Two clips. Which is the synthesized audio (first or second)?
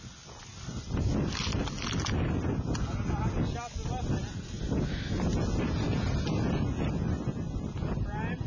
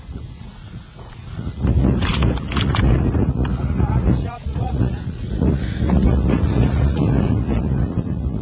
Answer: second